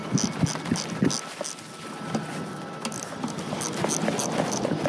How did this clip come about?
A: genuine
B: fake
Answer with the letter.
A